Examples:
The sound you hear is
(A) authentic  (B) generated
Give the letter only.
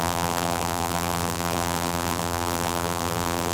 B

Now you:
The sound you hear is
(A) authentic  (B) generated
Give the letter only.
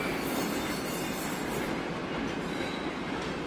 A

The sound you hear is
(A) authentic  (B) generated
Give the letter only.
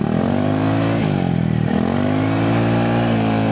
A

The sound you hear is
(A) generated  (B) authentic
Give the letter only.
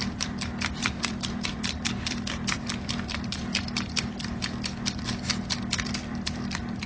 A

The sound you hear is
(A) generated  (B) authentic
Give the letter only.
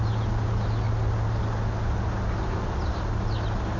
B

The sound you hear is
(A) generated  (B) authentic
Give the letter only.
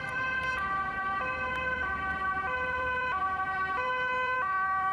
A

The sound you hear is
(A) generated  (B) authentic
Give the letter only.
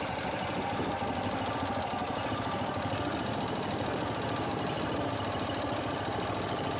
A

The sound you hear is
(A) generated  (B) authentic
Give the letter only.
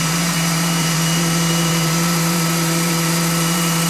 A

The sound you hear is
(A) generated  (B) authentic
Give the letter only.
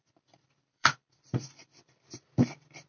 A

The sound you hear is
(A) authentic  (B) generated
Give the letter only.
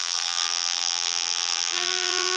B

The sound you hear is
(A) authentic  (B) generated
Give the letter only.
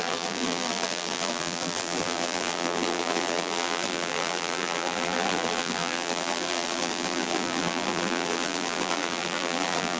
B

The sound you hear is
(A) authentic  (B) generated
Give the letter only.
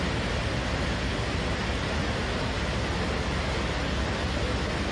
A